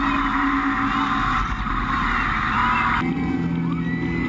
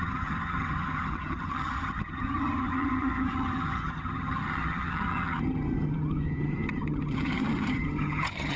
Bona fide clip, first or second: first